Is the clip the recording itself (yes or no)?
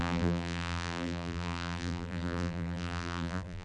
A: no